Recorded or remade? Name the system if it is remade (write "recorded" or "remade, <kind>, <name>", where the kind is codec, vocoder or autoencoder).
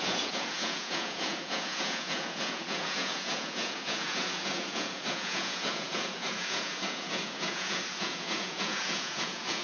remade, vocoder, Vocos